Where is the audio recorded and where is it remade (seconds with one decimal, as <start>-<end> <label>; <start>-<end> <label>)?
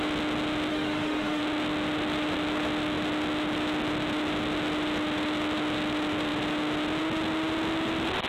0.0-0.7 recorded; 0.7-1.4 remade; 1.4-8.3 recorded